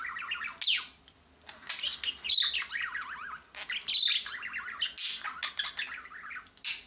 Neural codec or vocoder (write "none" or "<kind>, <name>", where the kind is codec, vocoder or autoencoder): none